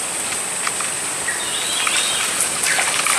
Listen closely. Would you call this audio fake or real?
real